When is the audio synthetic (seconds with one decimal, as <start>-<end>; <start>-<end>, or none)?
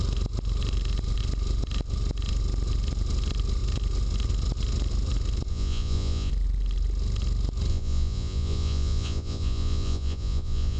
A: 5.5-6.3; 7.7-10.8